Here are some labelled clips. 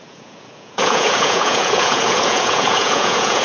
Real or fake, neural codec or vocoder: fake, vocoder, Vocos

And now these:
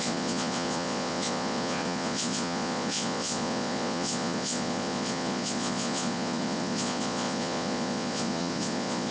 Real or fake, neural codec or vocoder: fake, vocoder, Vocos